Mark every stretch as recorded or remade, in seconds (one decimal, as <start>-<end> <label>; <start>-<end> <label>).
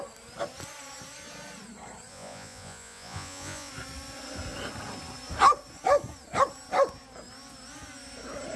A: 0.0-2.1 recorded; 2.1-3.7 remade; 3.7-8.6 recorded